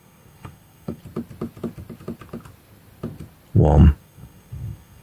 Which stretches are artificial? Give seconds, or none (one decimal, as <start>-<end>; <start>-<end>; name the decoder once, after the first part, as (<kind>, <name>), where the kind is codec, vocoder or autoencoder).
0.0-1.0 (codec, SNAC); 4.0-5.0